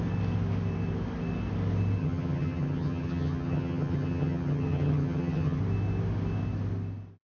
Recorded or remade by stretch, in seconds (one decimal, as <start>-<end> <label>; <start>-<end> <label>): 0.0-2.0 recorded; 2.0-5.6 remade; 5.6-7.2 recorded